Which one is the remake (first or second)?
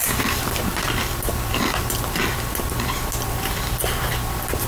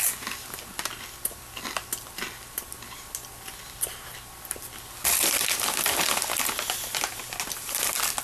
first